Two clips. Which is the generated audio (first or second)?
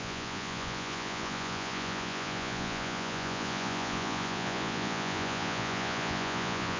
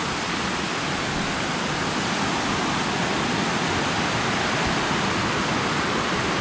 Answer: first